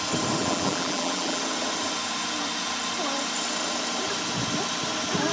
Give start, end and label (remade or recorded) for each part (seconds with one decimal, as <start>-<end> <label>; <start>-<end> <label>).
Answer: 0.0-0.4 recorded; 0.4-1.4 remade; 1.4-5.3 recorded